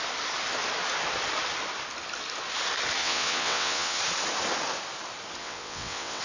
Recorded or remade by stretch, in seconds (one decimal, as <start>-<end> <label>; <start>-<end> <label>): 0.0-3.0 recorded; 3.0-4.0 remade; 4.0-5.4 recorded; 5.4-6.2 remade